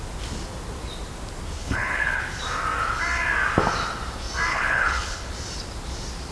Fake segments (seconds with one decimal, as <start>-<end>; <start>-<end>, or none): 1.6-2.2; 4.5-5.3